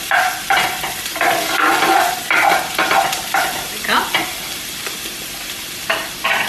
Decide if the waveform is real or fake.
real